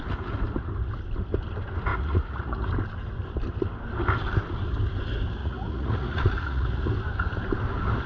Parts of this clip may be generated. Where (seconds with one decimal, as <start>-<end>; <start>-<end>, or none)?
1.9-2.7; 5.4-6.9